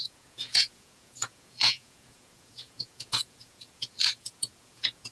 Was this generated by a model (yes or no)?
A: yes